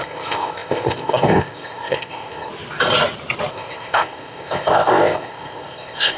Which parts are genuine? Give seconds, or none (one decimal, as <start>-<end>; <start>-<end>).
2.5-3.5